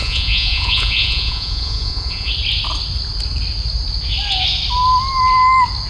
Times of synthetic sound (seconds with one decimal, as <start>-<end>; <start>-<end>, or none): 0.0-2.3